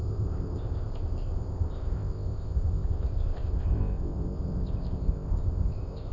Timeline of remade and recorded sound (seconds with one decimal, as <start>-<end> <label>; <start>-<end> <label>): 0.0-6.1 remade